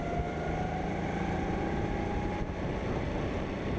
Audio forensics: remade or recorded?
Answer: recorded